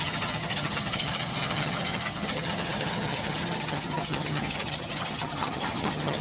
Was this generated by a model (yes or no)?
yes